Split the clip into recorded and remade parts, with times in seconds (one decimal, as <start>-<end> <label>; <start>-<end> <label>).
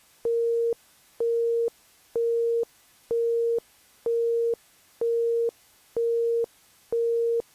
0.0-7.5 remade